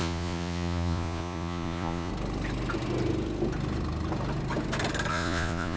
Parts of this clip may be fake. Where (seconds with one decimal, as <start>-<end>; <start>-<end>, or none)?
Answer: 0.0-2.1; 5.1-5.8